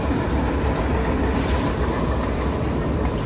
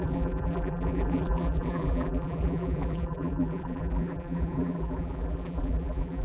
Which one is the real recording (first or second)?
first